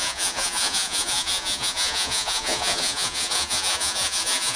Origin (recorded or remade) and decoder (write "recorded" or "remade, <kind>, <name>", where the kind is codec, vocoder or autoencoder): remade, vocoder, Vocos